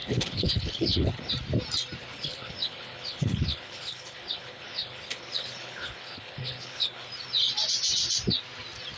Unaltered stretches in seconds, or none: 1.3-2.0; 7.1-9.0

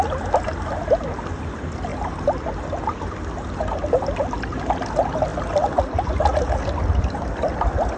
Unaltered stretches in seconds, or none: 0.0-1.9; 2.4-8.0

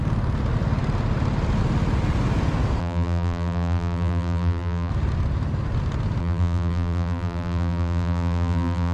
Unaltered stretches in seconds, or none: 0.0-2.8; 4.9-6.2

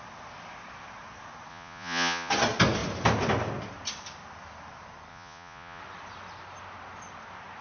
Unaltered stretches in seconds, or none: 0.0-1.5; 2.3-5.1; 5.8-7.6

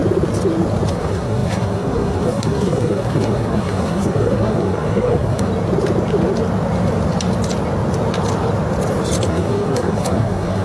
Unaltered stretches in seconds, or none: 0.0-0.9; 5.5-9.3

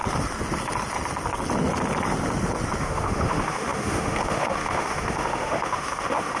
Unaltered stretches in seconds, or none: 0.0-2.8

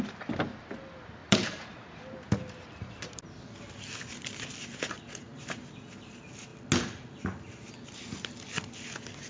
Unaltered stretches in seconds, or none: 0.0-1.2; 3.2-5.3; 5.8-9.3